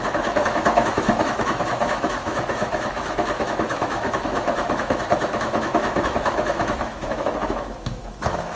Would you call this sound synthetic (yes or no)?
yes